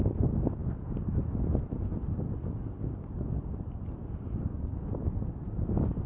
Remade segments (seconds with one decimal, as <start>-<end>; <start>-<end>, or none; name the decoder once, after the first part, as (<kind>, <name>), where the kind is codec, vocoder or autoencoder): none